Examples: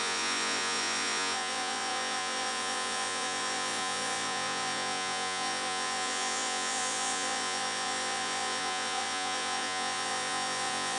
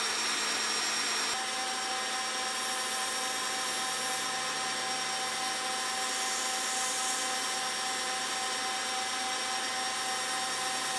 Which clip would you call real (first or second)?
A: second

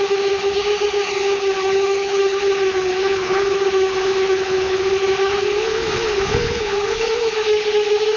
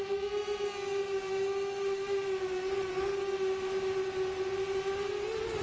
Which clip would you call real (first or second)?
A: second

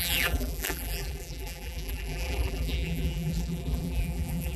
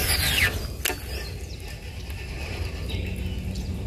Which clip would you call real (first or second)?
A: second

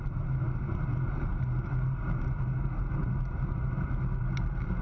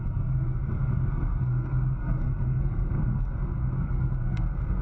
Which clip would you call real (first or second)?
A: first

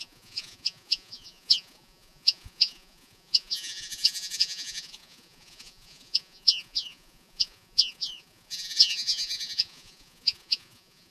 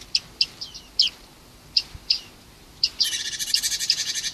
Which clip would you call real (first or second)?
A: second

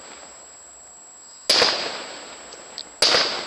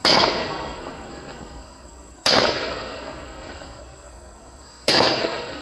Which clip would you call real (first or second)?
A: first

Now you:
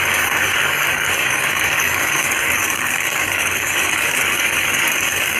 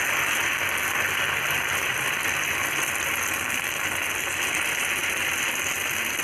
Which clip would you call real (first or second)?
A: second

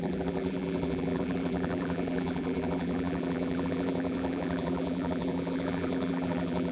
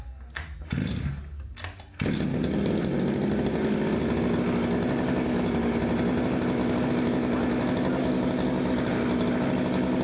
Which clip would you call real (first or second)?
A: second